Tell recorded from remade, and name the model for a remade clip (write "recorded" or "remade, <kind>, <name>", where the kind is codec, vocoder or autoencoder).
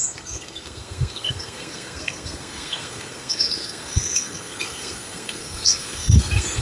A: remade, codec, SNAC